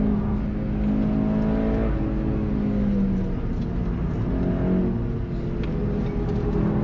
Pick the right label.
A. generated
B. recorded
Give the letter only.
B